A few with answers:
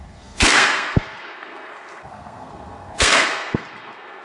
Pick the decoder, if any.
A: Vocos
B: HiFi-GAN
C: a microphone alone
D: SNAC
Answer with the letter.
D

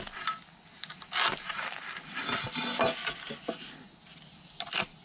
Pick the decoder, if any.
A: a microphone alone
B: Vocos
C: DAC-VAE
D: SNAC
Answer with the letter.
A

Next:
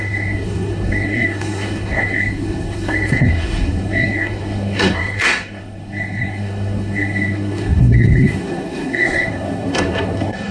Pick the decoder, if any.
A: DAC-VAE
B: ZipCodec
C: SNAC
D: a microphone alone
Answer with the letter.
C